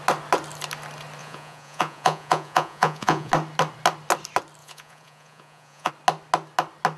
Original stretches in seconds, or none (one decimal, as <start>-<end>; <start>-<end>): 0.0-1.2; 3.3-4.6; 5.9-7.0